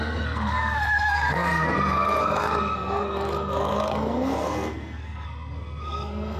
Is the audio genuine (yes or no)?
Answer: no